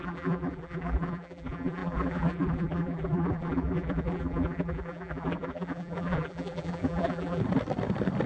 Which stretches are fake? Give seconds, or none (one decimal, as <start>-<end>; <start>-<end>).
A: 0.0-7.4